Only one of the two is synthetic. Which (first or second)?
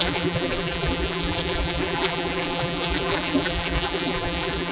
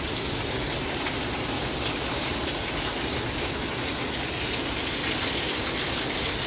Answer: first